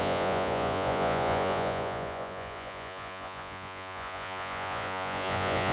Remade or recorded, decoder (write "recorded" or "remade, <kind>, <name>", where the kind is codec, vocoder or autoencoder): remade, vocoder, Vocos